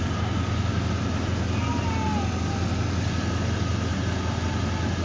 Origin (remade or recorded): recorded